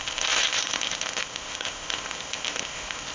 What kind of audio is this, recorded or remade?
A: remade